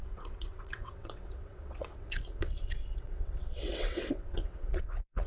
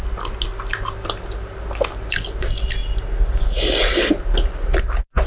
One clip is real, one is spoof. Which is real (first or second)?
second